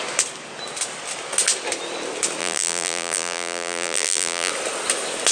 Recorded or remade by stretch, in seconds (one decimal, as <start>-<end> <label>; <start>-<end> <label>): 0.0-2.4 recorded; 2.4-4.5 remade; 4.5-5.3 recorded